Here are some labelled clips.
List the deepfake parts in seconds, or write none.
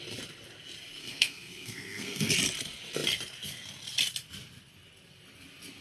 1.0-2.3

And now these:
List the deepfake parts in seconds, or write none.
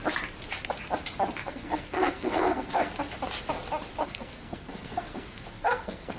1.4-2.9; 4.0-6.2